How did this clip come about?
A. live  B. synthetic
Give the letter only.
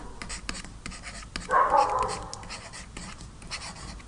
A